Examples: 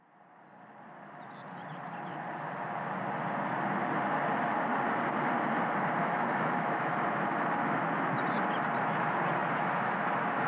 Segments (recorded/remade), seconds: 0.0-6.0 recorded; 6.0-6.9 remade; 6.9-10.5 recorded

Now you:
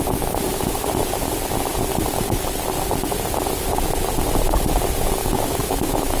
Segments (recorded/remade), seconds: 0.0-5.2 recorded; 5.2-6.2 remade

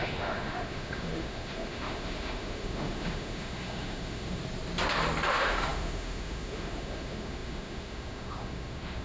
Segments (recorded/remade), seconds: 0.0-4.4 remade; 4.4-5.3 recorded; 5.3-9.0 remade

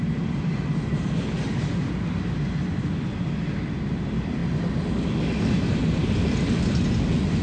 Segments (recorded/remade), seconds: 0.0-7.4 recorded

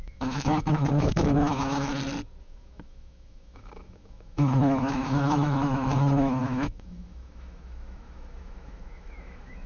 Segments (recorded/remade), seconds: 0.0-1.9 remade; 1.9-2.4 recorded; 2.4-9.7 remade

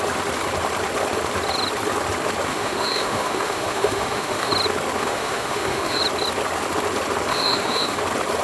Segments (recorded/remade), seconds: 0.0-2.5 recorded; 2.5-4.5 remade; 4.5-5.0 recorded; 5.0-6.0 remade; 6.0-7.3 recorded; 7.3-8.0 remade; 8.0-8.4 recorded